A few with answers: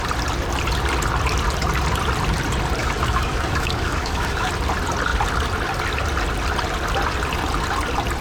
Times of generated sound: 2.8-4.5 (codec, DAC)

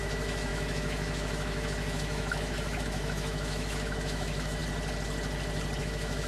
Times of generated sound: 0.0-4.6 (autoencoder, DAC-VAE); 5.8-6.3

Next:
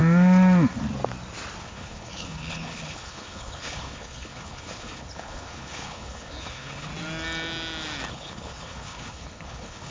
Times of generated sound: 1.6-6.9 (codec, HILCodec); 8.1-9.9

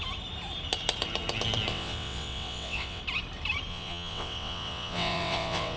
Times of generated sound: 1.7-3.0 (vocoder, WaveNeXt); 3.7-5.8

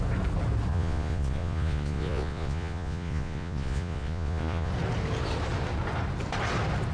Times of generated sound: 0.7-4.7 (vocoder, Vocos)

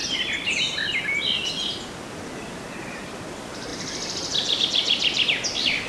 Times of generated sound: none